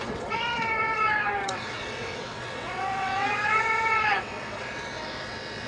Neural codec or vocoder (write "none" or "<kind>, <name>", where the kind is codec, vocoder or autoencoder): vocoder, WaveNeXt